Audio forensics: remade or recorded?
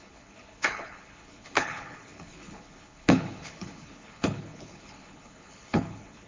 remade